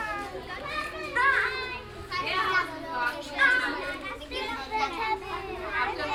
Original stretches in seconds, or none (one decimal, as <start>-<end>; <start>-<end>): 0.0-6.1